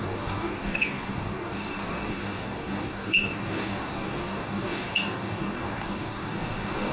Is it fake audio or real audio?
fake